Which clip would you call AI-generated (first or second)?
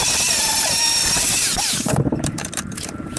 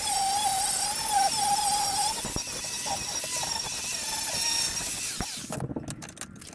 first